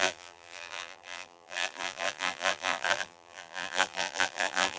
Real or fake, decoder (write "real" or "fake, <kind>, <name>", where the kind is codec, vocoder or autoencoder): fake, vocoder, BigVGAN v2